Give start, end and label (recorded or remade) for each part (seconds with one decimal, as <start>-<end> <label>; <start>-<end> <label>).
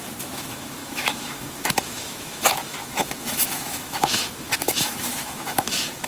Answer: 0.0-6.1 remade